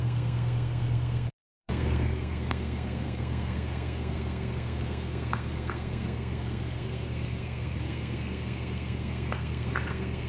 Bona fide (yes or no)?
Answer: no